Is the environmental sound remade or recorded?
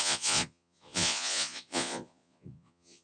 remade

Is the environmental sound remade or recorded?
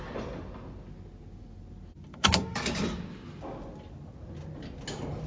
recorded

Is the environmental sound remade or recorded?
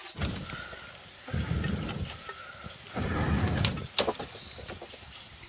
recorded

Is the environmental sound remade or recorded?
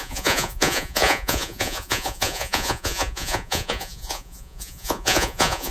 remade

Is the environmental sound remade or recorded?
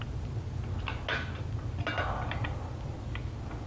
recorded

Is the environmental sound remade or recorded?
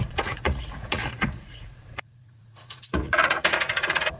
remade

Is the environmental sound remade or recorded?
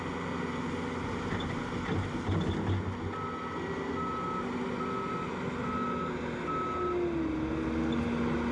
recorded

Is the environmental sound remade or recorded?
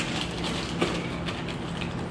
recorded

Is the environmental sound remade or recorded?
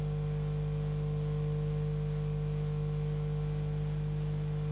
recorded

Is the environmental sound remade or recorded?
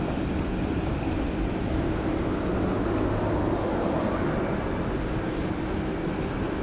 recorded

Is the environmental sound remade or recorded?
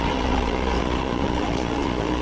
remade